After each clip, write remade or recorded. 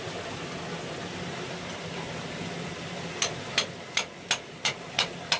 recorded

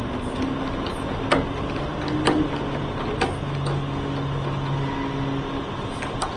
recorded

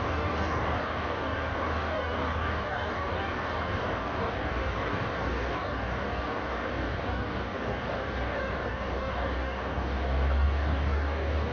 remade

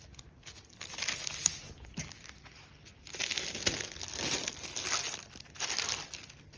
recorded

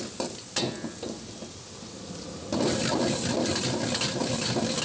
recorded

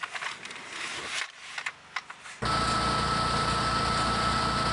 recorded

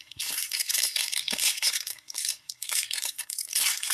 remade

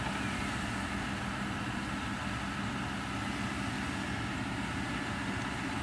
recorded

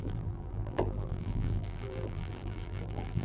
remade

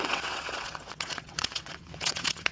remade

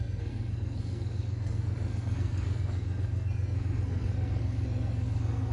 remade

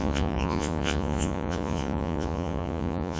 remade